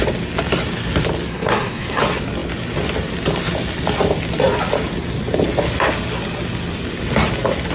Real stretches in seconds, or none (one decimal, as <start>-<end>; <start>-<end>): 0.0-1.3; 2.0-7.7